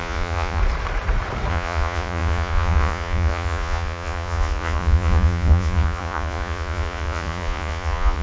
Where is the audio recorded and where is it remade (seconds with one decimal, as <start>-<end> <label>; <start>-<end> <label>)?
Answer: 0.0-0.6 remade; 0.6-1.5 recorded; 1.5-8.2 remade